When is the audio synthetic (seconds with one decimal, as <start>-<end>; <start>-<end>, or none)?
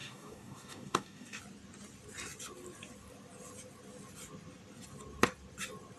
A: 0.0-1.4